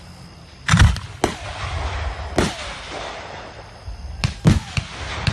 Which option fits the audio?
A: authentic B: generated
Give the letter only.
A